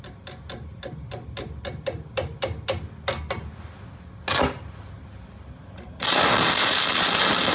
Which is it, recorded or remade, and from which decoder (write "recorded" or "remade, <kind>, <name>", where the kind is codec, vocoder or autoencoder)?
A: recorded